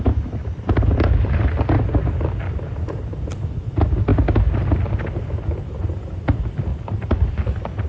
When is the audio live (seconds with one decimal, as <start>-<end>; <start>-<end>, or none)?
0.0-6.7; 7.3-7.9